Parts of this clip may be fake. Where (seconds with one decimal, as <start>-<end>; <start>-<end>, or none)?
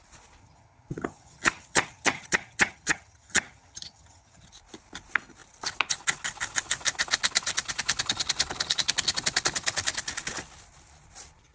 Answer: 0.4-4.5